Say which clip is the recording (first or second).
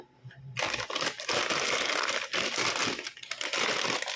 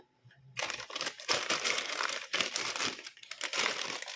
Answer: first